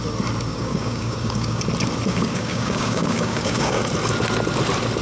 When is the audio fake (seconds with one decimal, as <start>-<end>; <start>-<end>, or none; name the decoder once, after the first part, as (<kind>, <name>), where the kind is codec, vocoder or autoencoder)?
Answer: 0.5-1.6 (codec, DAC); 2.1-3.8